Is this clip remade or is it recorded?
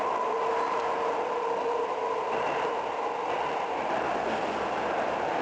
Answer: recorded